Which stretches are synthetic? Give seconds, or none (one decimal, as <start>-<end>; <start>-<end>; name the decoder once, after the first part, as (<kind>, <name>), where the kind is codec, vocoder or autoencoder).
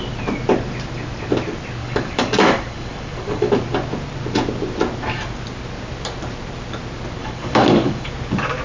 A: 1.8-3.5 (codec, DAC); 7.2-8.1